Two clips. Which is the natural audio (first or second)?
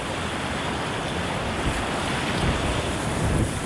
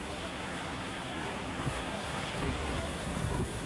first